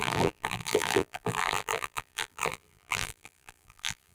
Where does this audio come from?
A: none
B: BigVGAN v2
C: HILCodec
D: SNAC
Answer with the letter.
B